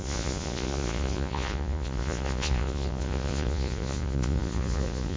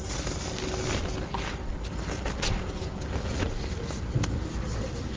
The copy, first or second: first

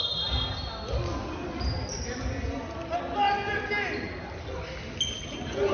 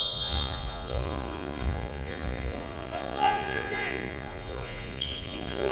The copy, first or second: second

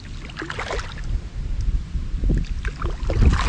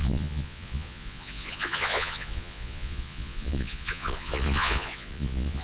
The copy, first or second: second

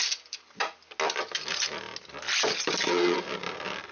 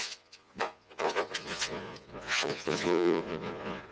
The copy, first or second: second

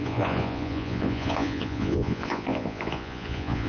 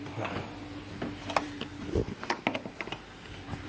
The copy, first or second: first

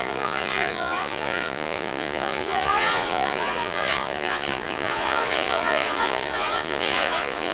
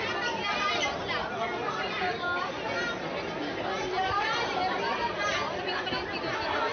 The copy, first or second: first